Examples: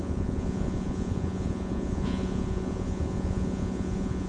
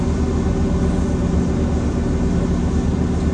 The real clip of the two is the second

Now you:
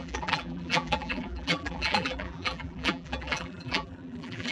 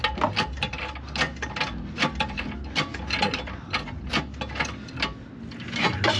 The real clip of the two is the second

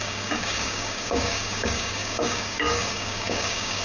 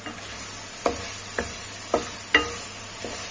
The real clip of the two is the second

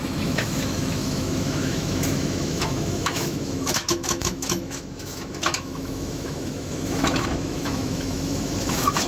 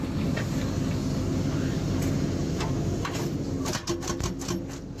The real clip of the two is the second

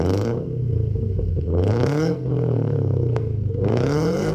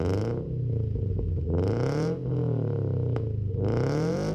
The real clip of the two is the second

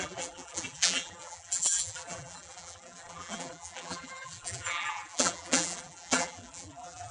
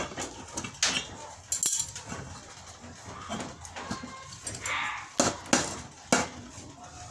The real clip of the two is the second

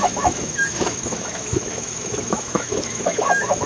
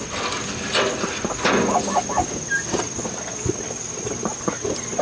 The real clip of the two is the second